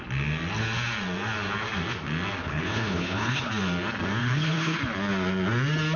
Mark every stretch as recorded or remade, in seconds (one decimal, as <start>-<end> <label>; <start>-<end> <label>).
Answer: 0.0-2.4 recorded; 2.4-3.5 remade; 3.5-4.2 recorded; 4.2-4.8 remade; 4.8-6.0 recorded